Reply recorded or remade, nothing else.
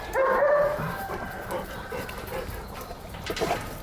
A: recorded